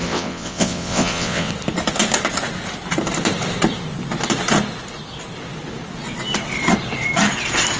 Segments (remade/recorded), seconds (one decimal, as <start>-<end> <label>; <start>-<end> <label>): 0.0-1.5 remade; 1.5-7.8 recorded